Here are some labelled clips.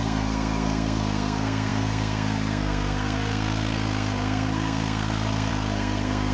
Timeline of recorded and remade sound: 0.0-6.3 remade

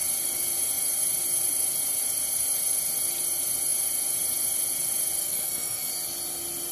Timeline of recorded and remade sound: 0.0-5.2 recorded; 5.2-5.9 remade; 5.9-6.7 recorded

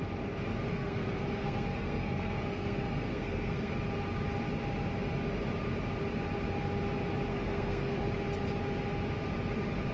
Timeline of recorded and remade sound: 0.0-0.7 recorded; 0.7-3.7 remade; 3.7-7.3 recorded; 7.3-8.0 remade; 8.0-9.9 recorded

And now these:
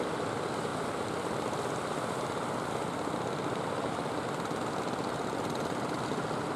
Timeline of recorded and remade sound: 0.0-6.6 recorded

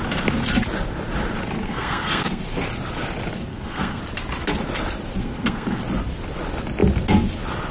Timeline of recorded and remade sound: 0.0-1.6 recorded; 1.6-2.4 remade; 2.4-3.5 recorded; 3.5-4.0 remade; 4.0-5.2 recorded; 5.2-5.8 remade; 5.8-7.7 recorded

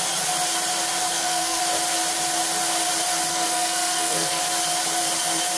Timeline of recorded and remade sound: 0.0-1.1 recorded; 1.1-1.6 remade; 1.6-3.3 recorded; 3.3-4.4 remade; 4.4-5.6 recorded

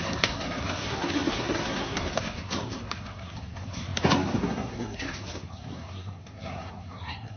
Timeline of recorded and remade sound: 0.0-7.4 remade

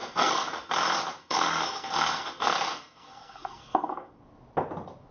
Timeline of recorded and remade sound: 0.0-0.7 remade; 0.7-1.2 recorded; 1.2-4.2 remade; 4.2-5.1 recorded